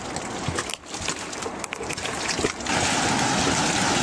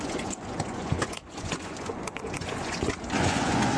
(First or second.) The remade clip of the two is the second